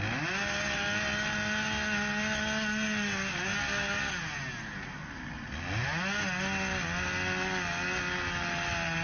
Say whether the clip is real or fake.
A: real